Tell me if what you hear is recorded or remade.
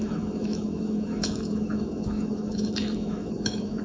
remade